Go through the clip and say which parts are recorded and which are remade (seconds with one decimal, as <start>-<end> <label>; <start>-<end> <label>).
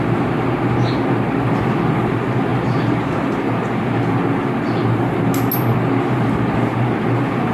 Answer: 0.0-7.5 recorded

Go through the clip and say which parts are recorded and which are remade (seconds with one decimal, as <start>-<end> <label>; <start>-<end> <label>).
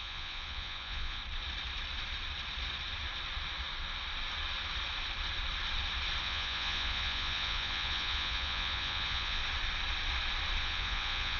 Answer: 0.0-1.2 remade; 1.2-6.2 recorded; 6.2-9.4 remade; 9.4-10.6 recorded; 10.6-11.4 remade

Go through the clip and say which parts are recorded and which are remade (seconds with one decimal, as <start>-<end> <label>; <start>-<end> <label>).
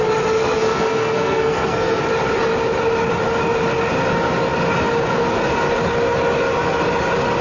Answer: 0.0-0.4 recorded; 0.4-2.0 remade; 2.0-7.4 recorded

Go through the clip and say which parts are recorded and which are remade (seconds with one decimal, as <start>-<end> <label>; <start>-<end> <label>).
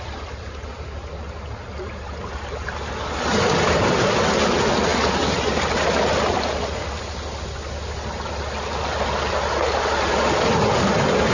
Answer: 0.0-3.3 recorded; 3.3-4.0 remade; 4.0-11.3 recorded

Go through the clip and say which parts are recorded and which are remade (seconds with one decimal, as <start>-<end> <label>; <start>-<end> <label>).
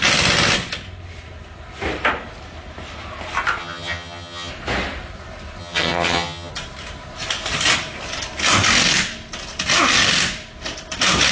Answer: 0.0-3.6 recorded; 3.6-4.5 remade; 4.5-5.6 recorded; 5.6-6.5 remade; 6.5-11.3 recorded